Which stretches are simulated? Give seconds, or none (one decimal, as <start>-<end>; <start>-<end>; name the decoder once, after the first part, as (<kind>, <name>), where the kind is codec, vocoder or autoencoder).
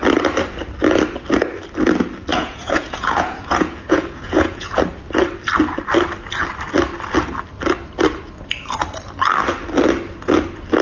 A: 2.3-4.7 (vocoder, Vocos)